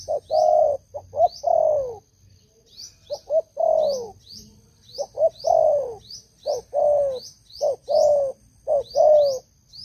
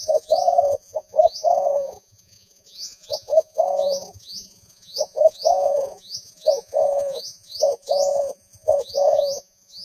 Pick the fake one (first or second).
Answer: second